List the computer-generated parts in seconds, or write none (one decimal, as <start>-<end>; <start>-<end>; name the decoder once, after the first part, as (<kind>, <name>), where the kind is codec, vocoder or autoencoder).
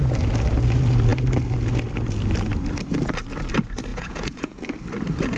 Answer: 3.9-4.6 (vocoder, Vocos)